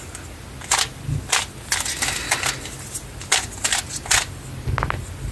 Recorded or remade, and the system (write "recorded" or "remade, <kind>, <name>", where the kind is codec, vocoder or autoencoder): recorded